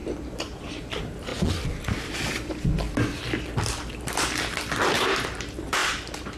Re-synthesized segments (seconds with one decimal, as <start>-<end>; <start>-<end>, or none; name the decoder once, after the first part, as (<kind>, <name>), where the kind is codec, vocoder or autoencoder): 0.0-1.3 (vocoder, BigVGAN v2); 4.9-6.4